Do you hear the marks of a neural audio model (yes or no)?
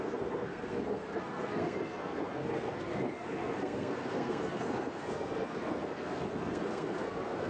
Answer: yes